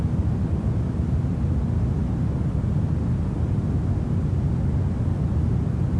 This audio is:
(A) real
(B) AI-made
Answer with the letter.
A